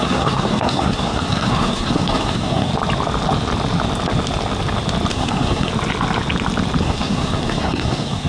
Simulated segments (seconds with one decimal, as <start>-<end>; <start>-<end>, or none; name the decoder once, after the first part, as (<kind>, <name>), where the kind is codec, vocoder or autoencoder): 0.0-2.7 (codec, SNAC); 5.1-5.7; 6.8-8.3